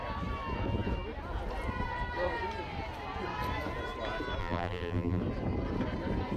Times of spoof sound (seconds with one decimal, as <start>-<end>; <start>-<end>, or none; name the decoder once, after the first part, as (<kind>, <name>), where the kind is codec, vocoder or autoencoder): 4.4-5.2 (vocoder, BigVGAN v2)